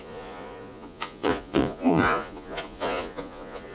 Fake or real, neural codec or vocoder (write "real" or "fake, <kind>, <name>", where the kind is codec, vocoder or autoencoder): fake, vocoder, Vocos